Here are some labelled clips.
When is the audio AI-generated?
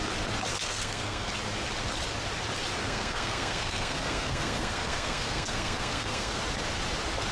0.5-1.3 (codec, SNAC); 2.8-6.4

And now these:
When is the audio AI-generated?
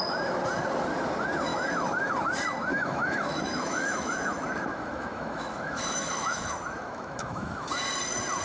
1.5-2.1 (autoencoder, DAC-VAE); 2.7-7.7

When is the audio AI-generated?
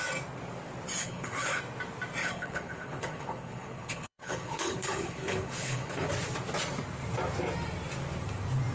1.0-1.6 (codec, HILCodec); 2.2-6.1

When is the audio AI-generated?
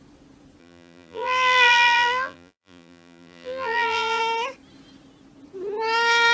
0.6-4.2 (vocoder, BigVGAN v2)